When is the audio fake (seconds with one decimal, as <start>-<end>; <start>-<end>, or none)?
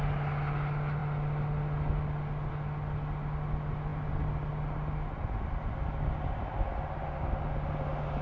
none